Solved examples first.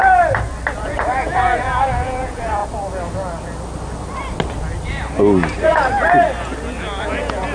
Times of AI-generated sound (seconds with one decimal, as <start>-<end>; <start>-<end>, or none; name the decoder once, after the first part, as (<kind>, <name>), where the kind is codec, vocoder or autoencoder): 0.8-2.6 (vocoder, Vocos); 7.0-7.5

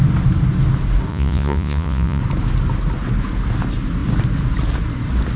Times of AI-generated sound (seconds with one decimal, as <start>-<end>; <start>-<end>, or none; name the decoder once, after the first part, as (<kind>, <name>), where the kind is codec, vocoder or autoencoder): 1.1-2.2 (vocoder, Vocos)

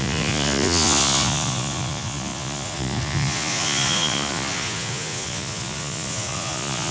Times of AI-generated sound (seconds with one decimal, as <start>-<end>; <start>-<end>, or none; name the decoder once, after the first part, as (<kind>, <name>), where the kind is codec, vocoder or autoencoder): 0.0-6.9 (vocoder, Vocos)

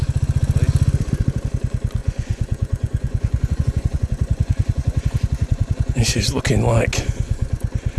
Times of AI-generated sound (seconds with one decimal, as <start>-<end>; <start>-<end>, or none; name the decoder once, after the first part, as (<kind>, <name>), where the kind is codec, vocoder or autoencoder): 2.0-6.4 (vocoder, Vocos)

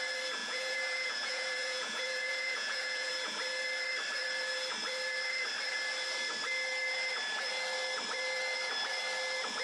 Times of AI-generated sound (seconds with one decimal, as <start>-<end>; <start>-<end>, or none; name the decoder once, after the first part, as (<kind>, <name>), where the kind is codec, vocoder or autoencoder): 0.4-3.1 (vocoder, Vocos)

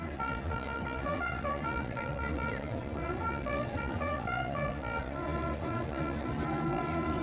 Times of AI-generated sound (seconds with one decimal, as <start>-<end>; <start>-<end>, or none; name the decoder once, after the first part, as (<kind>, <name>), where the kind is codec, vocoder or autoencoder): 0.0-7.2 (vocoder, Vocos)

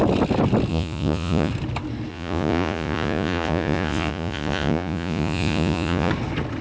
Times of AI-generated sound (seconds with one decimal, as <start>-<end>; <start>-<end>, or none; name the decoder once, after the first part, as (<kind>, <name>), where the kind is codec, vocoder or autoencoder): 0.7-1.5 (vocoder, Vocos); 2.1-6.1